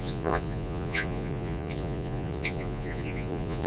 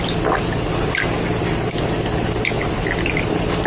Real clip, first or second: second